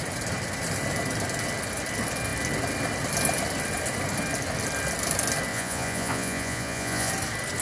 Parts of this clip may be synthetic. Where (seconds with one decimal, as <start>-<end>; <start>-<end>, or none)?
5.5-7.1